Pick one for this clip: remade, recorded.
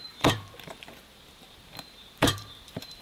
remade